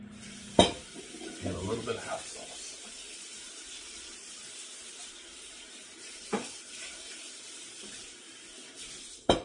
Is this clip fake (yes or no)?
yes